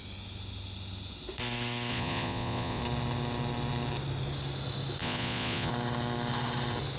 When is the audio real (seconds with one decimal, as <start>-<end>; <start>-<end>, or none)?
0.0-1.9; 2.8-5.0; 5.7-7.0